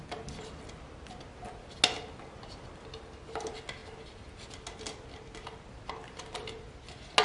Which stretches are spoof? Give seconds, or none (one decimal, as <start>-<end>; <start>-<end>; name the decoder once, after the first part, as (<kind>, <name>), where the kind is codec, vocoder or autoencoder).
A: none